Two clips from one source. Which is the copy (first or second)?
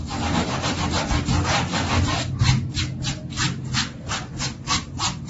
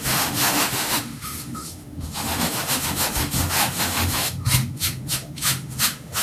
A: second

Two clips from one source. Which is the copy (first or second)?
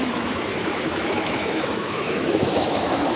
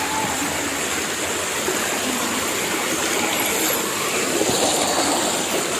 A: first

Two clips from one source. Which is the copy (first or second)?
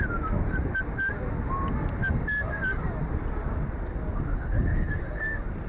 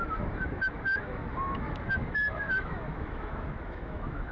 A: second